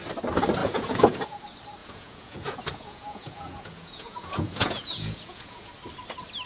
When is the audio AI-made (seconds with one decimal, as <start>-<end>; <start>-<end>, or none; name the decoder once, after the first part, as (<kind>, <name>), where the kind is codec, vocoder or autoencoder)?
0.6-1.4 (vocoder, Vocos); 1.8-5.7